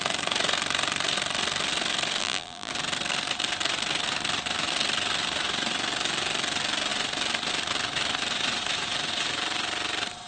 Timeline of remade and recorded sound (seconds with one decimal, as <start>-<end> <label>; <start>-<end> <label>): 0.0-2.2 recorded; 2.2-2.7 remade; 2.7-10.3 recorded